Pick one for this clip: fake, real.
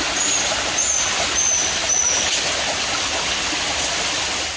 real